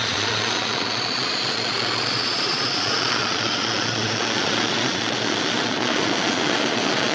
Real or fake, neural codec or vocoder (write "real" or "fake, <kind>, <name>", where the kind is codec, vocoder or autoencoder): fake, vocoder, Vocos